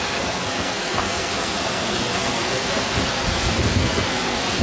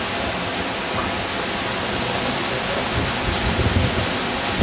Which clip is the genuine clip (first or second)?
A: second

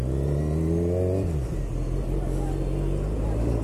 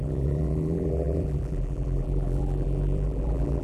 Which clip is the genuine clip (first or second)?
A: first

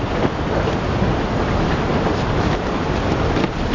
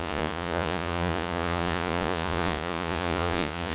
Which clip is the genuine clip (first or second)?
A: first